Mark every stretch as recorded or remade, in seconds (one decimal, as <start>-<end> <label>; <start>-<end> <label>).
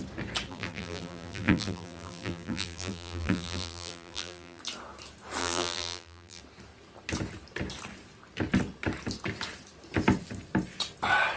0.0-0.5 recorded; 0.5-4.6 remade; 4.6-5.4 recorded; 5.4-6.4 remade; 6.4-11.4 recorded